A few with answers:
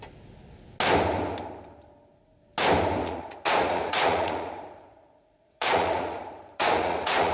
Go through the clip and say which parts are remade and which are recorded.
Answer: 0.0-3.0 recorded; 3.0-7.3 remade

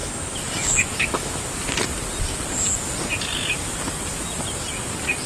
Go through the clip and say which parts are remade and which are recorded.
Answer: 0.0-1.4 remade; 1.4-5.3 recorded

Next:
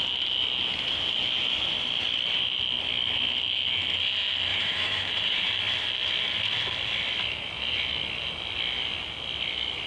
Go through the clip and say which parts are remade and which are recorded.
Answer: 0.0-4.5 recorded; 4.5-5.5 remade; 5.5-9.9 recorded

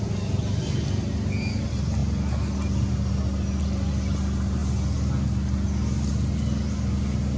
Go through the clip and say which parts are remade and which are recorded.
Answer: 0.0-7.4 recorded

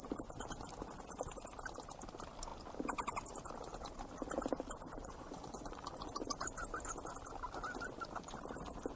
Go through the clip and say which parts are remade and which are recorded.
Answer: 0.0-5.0 recorded; 5.0-6.1 remade; 6.1-9.0 recorded